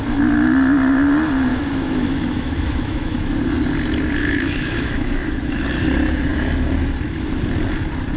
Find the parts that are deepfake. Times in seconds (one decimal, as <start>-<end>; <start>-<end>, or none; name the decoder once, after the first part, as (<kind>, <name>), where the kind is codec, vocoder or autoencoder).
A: 1.5-3.3 (autoencoder, DAC-VAE); 4.2-5.6